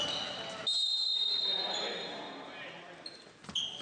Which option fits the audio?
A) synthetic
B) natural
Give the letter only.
B